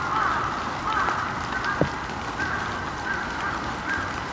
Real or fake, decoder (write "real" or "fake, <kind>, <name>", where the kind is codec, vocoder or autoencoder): real